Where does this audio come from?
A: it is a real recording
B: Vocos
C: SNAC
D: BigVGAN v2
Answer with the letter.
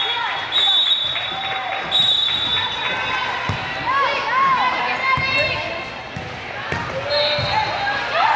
A